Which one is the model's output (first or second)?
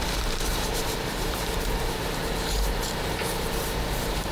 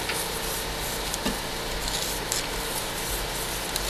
first